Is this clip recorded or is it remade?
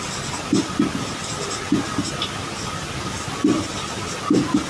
recorded